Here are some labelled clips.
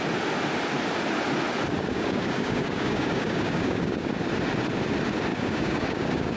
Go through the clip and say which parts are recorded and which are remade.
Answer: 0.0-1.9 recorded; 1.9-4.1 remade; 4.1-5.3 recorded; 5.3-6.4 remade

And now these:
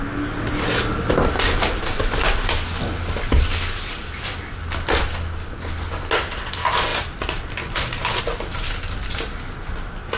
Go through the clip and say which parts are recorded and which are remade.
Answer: 0.0-10.2 recorded

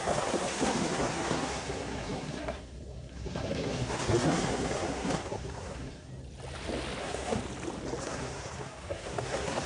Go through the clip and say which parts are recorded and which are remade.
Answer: 0.0-6.1 remade; 6.1-7.0 recorded; 7.0-7.4 remade; 7.4-8.0 recorded; 8.0-9.7 remade